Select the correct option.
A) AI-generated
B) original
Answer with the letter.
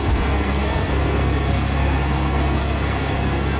A